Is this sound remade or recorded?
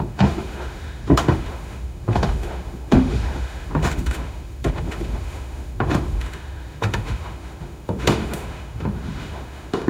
remade